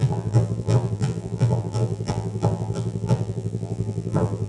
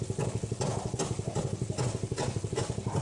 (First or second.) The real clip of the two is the second